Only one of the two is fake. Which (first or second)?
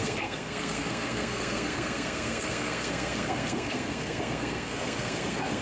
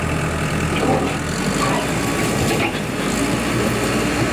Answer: first